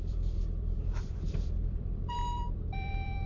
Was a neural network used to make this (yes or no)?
yes